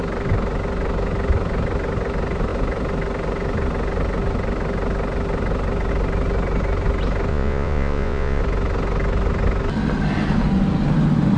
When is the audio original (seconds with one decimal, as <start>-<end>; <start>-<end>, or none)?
0.0-7.3; 8.4-11.4